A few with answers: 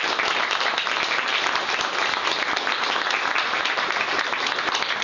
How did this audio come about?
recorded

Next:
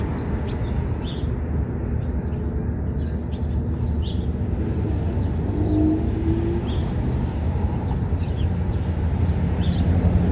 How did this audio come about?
recorded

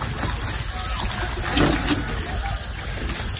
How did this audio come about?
recorded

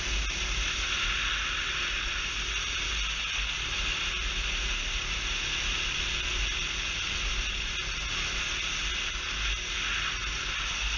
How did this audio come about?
recorded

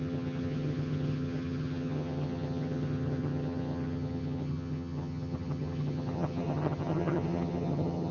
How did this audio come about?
remade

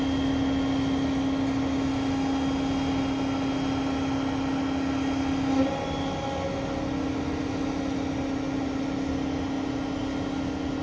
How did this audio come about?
recorded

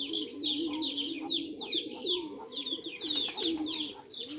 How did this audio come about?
recorded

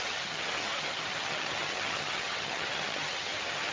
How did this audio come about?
remade